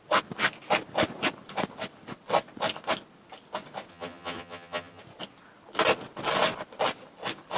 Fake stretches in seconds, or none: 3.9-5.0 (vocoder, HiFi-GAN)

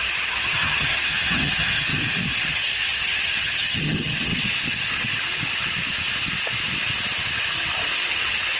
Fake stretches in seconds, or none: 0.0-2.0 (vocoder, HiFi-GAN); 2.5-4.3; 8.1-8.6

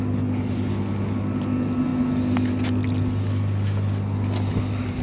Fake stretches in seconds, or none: none

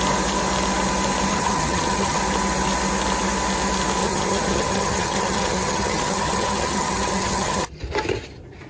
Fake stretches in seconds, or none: 1.3-2.2 (vocoder, HiFi-GAN); 4.0-7.8